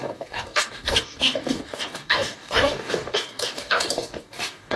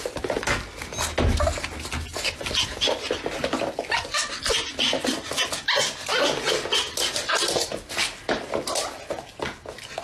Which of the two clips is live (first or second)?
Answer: second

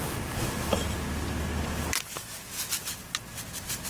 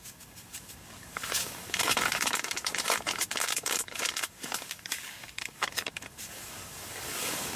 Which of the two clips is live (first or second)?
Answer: first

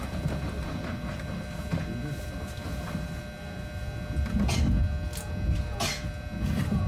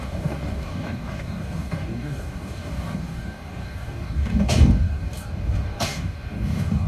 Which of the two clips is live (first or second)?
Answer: first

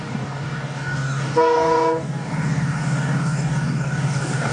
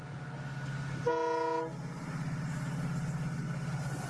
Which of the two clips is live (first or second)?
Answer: second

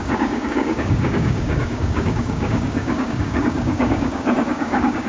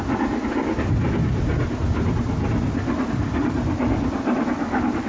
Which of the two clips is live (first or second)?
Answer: second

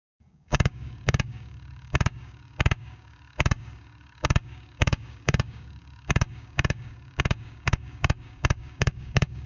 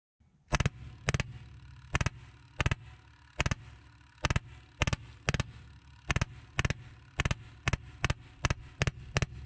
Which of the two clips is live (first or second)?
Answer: second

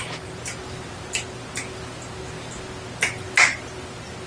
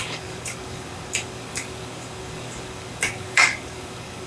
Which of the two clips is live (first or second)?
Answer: first